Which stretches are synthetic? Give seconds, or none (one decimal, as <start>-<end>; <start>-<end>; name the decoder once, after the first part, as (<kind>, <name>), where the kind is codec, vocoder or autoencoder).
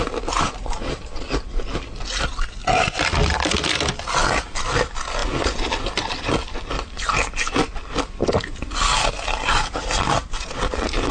none